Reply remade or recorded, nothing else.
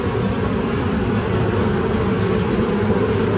recorded